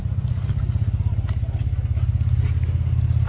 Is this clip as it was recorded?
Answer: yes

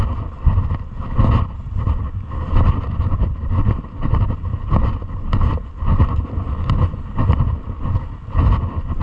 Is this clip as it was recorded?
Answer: yes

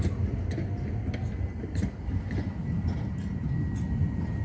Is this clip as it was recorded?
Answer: yes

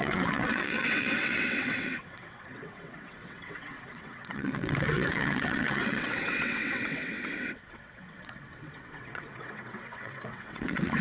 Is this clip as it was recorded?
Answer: no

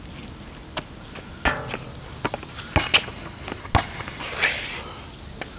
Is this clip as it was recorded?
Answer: yes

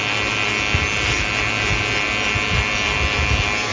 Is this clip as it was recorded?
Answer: yes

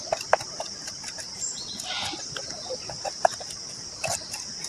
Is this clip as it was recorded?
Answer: yes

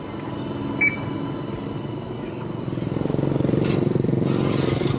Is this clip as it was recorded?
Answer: yes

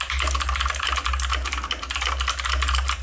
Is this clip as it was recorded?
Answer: yes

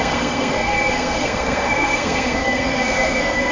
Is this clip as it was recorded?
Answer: no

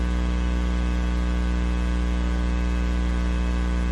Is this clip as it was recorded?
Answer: yes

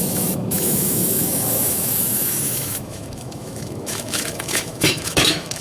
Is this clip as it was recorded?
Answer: no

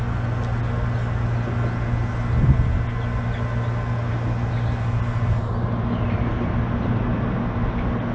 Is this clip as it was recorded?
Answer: yes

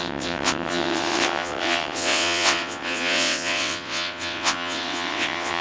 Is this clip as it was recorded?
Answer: no